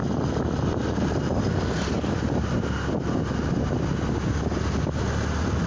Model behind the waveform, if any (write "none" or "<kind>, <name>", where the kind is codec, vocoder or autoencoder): none